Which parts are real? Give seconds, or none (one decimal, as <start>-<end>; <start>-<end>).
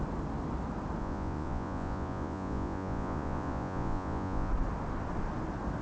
0.0-1.0; 4.5-5.8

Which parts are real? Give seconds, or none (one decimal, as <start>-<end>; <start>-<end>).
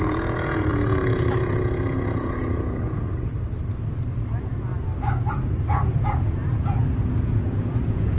3.1-4.3; 4.7-5.3